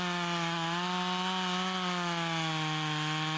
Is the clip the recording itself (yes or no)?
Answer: yes